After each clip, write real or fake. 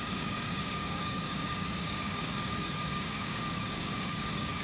fake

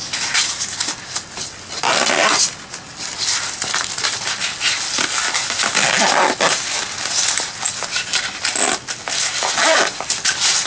real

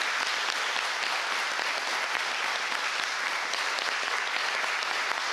real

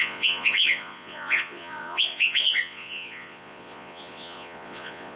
fake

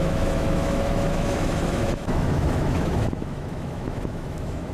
fake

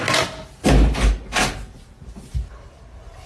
real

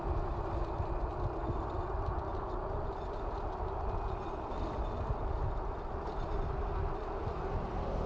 real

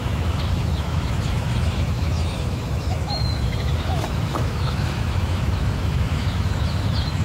fake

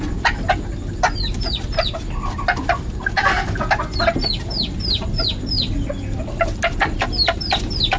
real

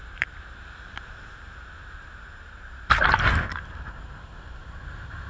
fake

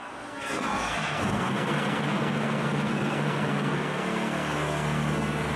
fake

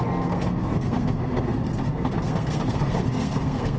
fake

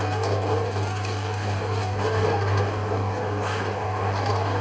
fake